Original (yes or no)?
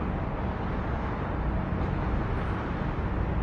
yes